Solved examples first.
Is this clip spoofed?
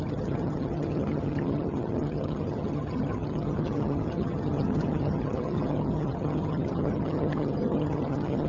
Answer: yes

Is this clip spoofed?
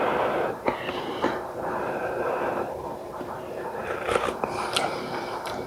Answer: yes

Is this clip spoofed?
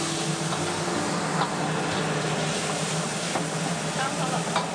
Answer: no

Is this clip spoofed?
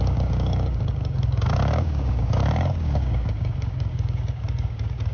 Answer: yes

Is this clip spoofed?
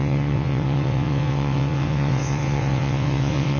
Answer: yes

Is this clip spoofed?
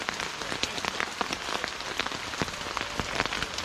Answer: no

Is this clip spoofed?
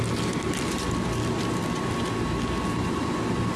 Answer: no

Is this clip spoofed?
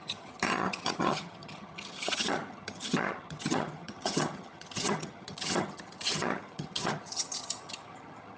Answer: yes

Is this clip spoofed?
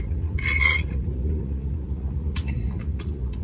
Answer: yes